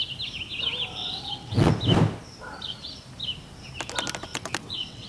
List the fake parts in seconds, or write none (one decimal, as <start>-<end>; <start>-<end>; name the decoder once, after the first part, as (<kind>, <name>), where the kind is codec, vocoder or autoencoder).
1.0-1.7 (vocoder, WaveNeXt); 4.3-5.1